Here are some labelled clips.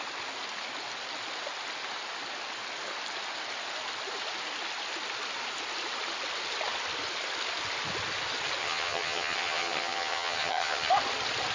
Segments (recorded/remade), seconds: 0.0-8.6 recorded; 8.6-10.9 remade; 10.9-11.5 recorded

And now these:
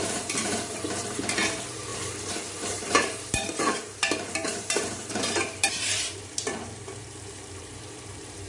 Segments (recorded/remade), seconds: 0.0-1.9 remade; 1.9-2.6 recorded; 2.6-8.5 remade